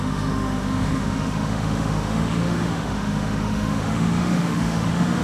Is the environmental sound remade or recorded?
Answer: remade